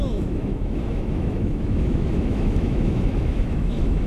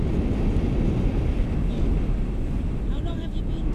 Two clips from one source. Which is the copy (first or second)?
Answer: first